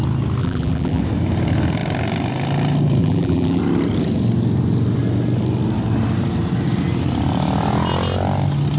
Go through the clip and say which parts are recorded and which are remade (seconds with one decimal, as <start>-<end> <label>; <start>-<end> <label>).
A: 0.0-0.4 recorded; 0.4-1.0 remade; 1.0-3.0 recorded; 3.0-3.6 remade; 3.6-8.8 recorded